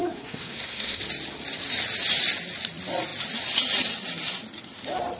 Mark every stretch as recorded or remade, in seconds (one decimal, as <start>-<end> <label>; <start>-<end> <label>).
0.0-1.0 remade; 1.0-5.2 recorded